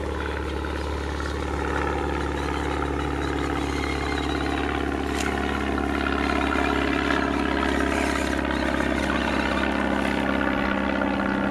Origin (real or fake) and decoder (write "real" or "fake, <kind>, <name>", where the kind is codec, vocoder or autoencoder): real